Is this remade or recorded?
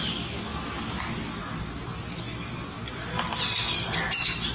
recorded